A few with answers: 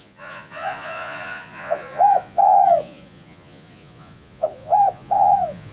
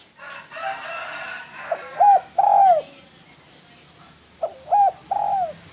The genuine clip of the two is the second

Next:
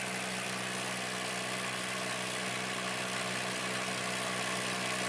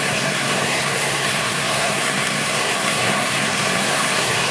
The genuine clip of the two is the first